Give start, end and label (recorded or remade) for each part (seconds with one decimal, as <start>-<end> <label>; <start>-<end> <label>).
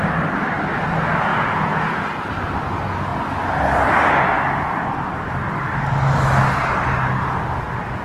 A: 0.0-1.3 recorded; 1.3-2.3 remade; 2.3-8.0 recorded